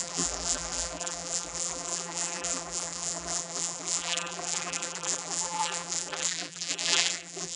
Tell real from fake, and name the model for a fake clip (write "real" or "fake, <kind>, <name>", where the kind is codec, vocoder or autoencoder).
fake, vocoder, BigVGAN v2